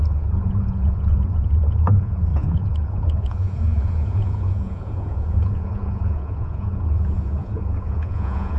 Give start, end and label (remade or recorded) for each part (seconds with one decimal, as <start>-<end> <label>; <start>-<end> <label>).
0.0-8.6 remade